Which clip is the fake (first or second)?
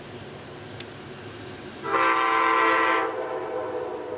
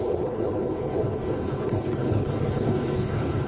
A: second